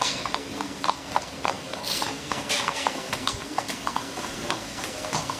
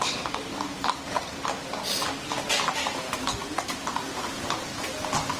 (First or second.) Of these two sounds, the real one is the second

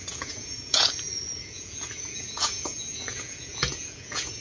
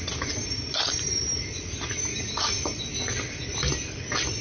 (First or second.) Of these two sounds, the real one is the second